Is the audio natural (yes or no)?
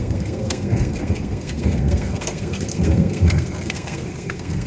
no